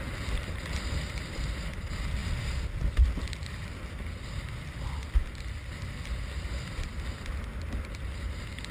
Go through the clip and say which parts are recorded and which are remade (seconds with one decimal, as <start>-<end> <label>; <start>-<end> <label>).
0.0-8.7 recorded